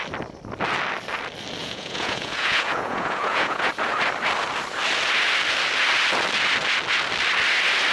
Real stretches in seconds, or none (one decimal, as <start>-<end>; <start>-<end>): 0.0-1.6; 3.7-7.9